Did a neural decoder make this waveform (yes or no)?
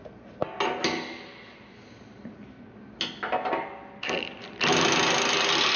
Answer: no